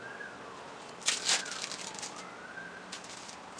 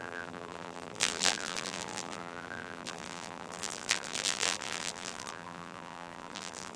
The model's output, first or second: second